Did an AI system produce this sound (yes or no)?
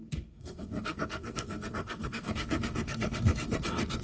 yes